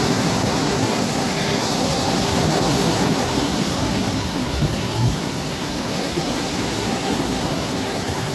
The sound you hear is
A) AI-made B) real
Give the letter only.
A